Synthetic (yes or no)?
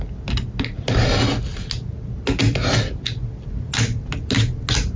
no